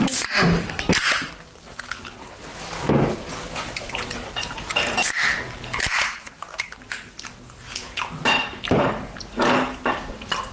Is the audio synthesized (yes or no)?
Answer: no